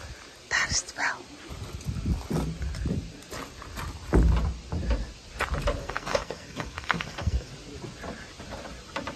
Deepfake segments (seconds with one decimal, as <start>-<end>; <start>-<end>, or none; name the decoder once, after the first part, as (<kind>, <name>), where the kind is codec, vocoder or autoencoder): 5.8-7.5 (codec, SNAC)